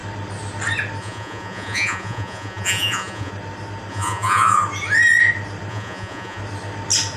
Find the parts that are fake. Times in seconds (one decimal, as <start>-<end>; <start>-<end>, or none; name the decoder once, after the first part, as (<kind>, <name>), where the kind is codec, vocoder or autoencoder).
1.0-3.3 (vocoder, Vocos); 3.9-4.6; 5.7-6.4